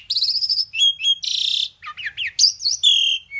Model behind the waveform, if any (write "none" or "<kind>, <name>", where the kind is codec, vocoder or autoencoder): none